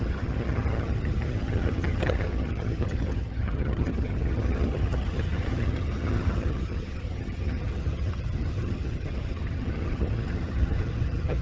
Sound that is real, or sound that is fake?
fake